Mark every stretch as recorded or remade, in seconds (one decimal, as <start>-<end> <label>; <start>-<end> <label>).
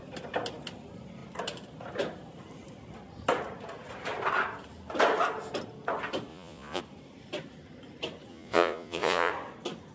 0.0-6.3 recorded; 6.3-6.8 remade; 6.8-8.3 recorded; 8.3-9.3 remade; 9.3-9.9 recorded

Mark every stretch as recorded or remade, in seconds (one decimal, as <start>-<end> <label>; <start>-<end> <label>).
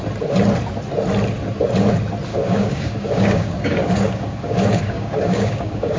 0.0-2.3 recorded; 2.3-6.0 remade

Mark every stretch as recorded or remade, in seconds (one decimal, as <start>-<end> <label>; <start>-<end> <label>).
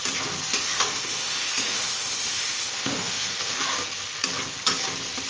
0.0-0.6 recorded; 0.6-3.6 remade; 3.6-5.3 recorded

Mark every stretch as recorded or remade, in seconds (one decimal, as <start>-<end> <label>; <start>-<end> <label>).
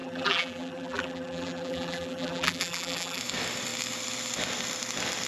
0.0-3.2 remade; 3.2-5.3 recorded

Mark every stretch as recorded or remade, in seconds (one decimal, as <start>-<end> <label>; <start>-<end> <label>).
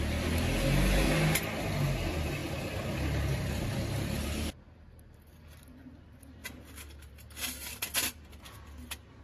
0.0-9.2 recorded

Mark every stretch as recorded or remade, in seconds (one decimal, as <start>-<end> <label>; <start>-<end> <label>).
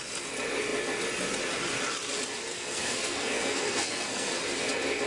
0.0-2.5 recorded; 2.5-4.3 remade; 4.3-5.1 recorded